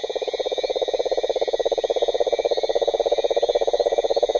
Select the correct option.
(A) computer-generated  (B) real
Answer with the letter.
A